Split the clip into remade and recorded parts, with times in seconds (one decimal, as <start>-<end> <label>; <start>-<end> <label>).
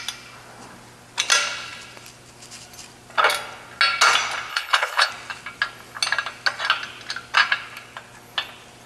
0.0-4.5 recorded; 4.5-5.1 remade; 5.1-8.9 recorded